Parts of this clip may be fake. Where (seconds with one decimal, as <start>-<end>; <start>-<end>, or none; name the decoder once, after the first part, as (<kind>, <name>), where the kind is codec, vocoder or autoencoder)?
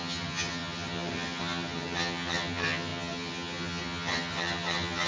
0.0-5.1 (vocoder, HiFi-GAN)